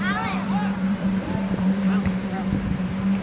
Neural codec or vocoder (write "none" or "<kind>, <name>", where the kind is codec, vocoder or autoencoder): vocoder, BigVGAN v2